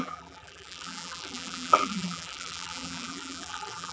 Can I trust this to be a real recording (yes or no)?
no